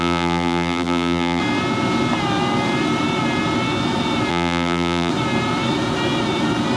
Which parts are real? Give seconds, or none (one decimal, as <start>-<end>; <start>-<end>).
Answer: 1.4-4.3; 5.1-6.8